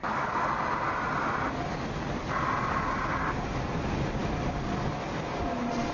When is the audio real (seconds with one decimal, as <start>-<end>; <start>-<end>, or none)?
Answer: 0.0-5.9